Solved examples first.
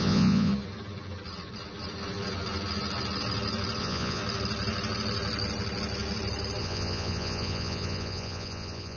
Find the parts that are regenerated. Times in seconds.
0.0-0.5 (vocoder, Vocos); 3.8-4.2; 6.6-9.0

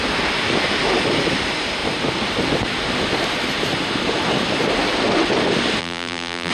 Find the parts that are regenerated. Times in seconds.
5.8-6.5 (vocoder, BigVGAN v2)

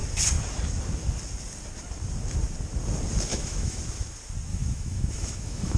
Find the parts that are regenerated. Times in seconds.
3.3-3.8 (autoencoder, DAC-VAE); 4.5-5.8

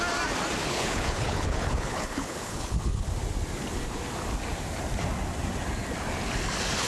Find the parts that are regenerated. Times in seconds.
0.6-3.1 (codec, HILCodec)